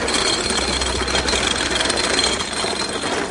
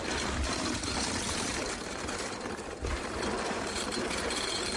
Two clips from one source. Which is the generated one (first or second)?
second